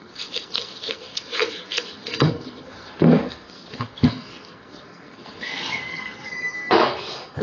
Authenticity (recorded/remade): remade